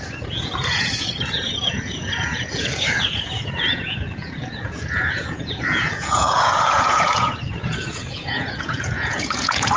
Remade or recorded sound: remade